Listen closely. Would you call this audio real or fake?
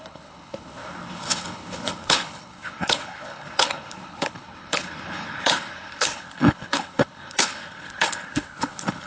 fake